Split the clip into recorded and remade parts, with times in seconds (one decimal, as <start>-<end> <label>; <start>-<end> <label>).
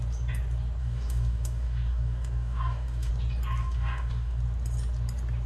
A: 0.0-0.8 recorded; 0.8-3.1 remade; 3.1-3.6 recorded; 3.6-4.4 remade; 4.4-5.5 recorded